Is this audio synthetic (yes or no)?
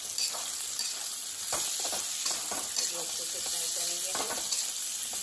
no